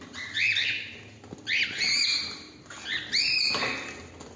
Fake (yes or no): no